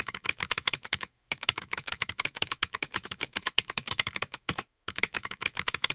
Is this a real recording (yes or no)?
no